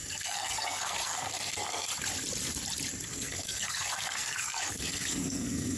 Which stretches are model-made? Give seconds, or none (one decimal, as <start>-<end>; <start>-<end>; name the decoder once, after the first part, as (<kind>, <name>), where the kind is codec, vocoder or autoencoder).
0.0-1.9 (codec, SNAC); 3.1-5.8